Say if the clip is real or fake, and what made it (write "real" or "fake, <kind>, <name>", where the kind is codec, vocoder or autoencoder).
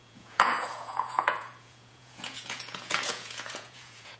fake, vocoder, Vocos